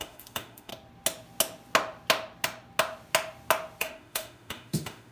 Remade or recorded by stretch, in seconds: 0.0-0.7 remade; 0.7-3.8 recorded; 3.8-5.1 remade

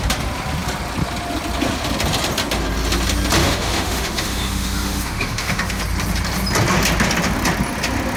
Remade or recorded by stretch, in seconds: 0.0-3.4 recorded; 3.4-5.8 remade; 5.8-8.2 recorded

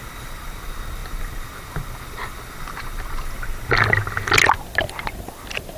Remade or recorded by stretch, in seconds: 0.0-5.8 recorded

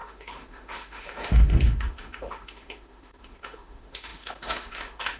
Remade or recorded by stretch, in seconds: 0.0-5.2 remade

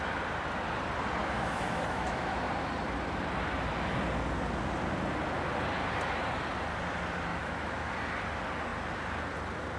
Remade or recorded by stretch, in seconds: 0.0-1.2 recorded; 1.2-2.5 remade; 2.5-7.3 recorded; 7.3-7.9 remade; 7.9-9.8 recorded

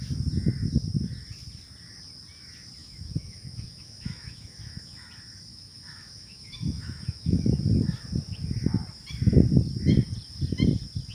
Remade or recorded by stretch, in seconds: 0.0-2.8 recorded; 2.8-5.1 remade; 5.1-5.5 recorded; 5.5-7.6 remade; 7.6-11.1 recorded